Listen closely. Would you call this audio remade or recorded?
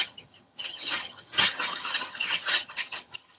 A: remade